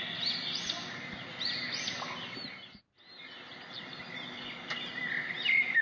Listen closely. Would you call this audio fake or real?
real